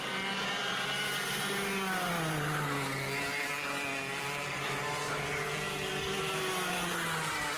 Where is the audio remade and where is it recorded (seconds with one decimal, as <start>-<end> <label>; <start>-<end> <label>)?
0.0-7.6 recorded